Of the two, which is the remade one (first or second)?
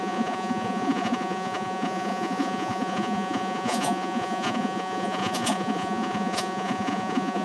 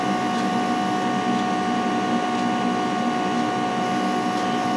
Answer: first